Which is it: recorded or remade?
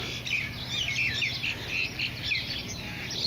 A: recorded